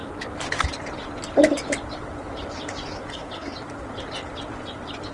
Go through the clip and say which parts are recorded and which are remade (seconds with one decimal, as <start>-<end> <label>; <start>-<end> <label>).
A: 0.0-3.1 recorded; 3.1-3.5 remade; 3.5-5.1 recorded